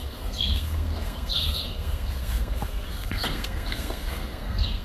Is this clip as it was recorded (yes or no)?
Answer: no